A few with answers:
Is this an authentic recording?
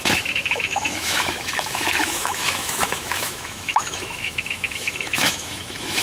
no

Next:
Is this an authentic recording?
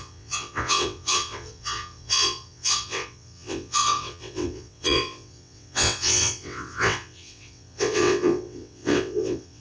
no